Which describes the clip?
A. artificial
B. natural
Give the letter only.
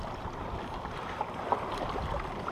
B